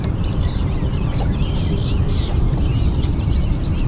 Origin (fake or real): fake